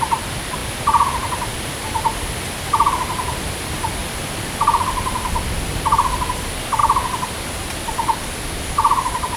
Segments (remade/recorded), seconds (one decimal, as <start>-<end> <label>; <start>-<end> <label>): 0.0-0.6 recorded; 0.6-1.6 remade; 1.6-4.0 recorded; 4.0-6.3 remade; 6.3-6.8 recorded; 6.8-9.4 remade

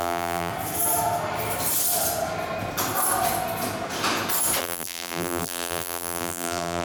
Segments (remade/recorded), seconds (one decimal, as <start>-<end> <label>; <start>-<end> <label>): 0.0-0.5 remade; 0.5-4.6 recorded; 4.6-6.8 remade

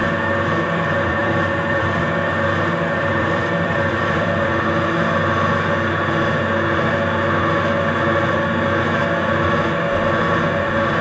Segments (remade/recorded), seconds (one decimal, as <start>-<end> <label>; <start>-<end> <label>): 0.0-1.2 recorded; 1.2-2.0 remade; 2.0-3.1 recorded; 3.1-4.5 remade; 4.5-11.0 recorded

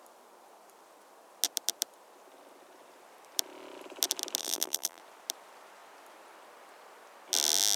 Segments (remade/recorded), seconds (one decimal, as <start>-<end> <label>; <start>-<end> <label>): 0.0-4.4 recorded; 4.4-5.0 remade; 5.0-7.8 recorded

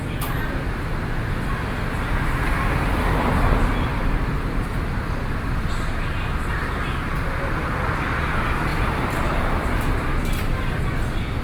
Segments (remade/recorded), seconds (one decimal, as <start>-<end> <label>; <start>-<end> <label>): 0.0-3.9 recorded; 3.9-5.7 remade; 5.7-8.7 recorded; 8.7-10.2 remade; 10.2-11.4 recorded

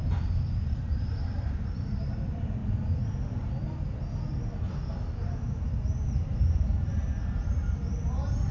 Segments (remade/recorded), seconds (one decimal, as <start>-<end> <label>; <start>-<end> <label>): 0.0-2.6 remade; 2.6-5.2 recorded; 5.2-8.5 remade

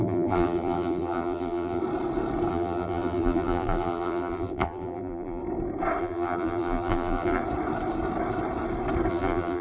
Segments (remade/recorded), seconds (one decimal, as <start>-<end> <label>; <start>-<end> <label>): 0.0-1.8 remade; 1.8-2.5 recorded; 2.5-5.4 remade; 5.4-6.0 recorded; 6.0-7.4 remade; 7.4-9.1 recorded; 9.1-9.6 remade

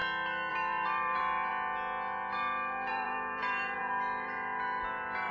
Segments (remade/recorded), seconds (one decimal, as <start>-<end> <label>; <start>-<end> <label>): 0.0-0.5 recorded; 0.5-1.5 remade; 1.5-2.9 recorded; 2.9-5.3 remade